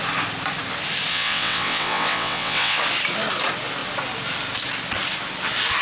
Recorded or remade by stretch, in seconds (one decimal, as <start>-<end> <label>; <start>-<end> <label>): 0.0-1.1 recorded; 1.1-2.8 remade; 2.8-5.8 recorded